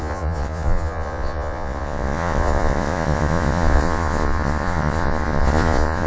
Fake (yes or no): yes